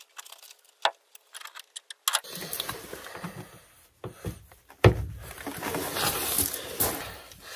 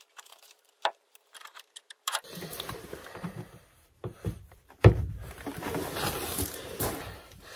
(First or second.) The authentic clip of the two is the first